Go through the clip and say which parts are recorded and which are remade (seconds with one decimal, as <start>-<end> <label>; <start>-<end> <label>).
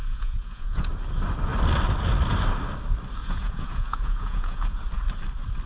0.0-0.9 remade; 0.9-3.2 recorded; 3.2-4.8 remade; 4.8-5.7 recorded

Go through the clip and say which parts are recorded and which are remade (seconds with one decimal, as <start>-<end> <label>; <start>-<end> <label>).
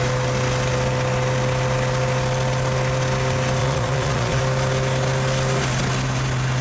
0.0-3.6 recorded; 3.6-4.4 remade; 4.4-6.6 recorded